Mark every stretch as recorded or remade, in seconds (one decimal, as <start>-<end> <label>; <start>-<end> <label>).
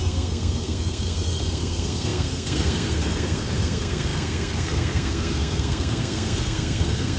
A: 0.0-7.2 remade